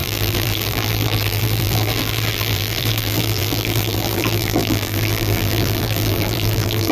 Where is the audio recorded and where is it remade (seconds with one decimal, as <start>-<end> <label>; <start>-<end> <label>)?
0.0-6.9 remade